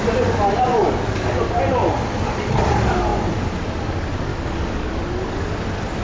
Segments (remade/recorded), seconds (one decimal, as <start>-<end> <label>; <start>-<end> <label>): 0.0-0.7 recorded; 0.7-1.4 remade; 1.4-4.3 recorded; 4.3-4.9 remade; 4.9-6.0 recorded